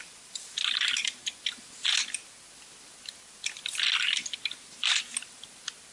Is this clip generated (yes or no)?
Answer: no